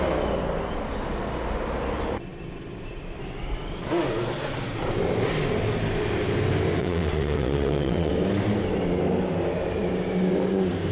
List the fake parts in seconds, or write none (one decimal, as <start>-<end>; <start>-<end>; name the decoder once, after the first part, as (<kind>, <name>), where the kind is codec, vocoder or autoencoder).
6.8-8.1 (vocoder, WaveNeXt)